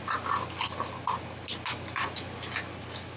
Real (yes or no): yes